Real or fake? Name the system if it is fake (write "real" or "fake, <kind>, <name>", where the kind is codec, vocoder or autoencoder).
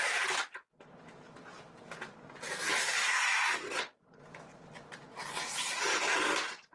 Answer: real